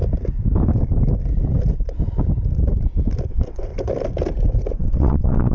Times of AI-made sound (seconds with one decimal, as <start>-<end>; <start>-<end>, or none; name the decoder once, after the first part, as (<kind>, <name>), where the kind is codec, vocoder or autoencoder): 3.3-3.7 (vocoder, WaveNeXt); 4.7-5.5